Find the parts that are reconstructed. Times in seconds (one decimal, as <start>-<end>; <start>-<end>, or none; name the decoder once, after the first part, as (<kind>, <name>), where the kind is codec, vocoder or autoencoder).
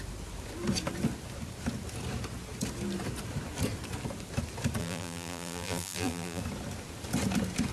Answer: 4.8-6.4 (vocoder, BigVGAN v2)